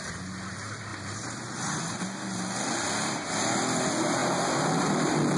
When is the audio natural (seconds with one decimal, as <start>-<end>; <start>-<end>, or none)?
0.0-5.4